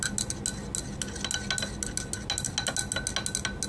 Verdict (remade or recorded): recorded